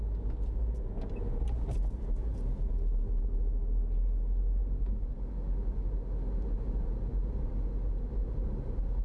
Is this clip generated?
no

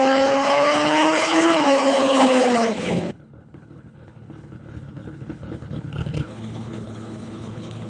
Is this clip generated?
yes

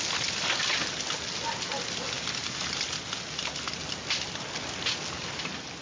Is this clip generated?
no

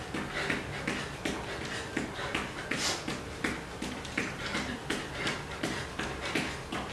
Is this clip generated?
no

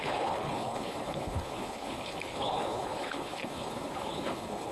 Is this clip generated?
yes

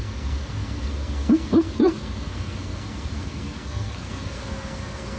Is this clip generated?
yes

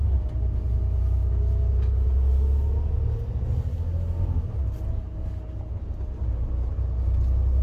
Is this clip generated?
no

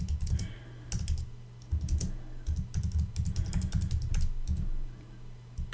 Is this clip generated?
no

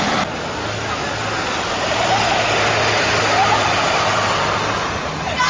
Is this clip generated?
no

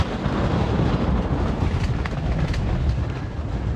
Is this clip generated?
no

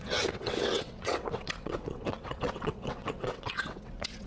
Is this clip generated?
yes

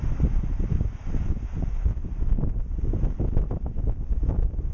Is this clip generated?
no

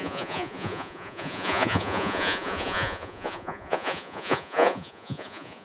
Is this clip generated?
yes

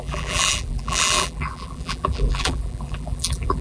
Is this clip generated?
yes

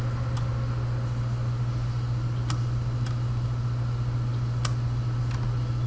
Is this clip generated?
no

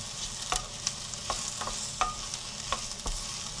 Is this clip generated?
no